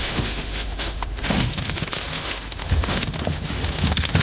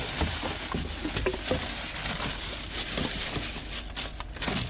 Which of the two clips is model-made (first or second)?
first